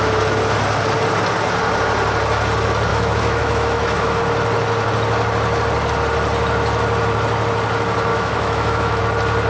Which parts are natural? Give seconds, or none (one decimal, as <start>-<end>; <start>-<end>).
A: 0.0-2.9; 4.2-8.1; 9.0-9.5